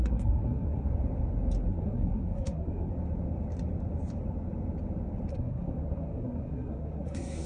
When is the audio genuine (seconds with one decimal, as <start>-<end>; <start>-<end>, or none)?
0.9-1.7; 2.9-5.3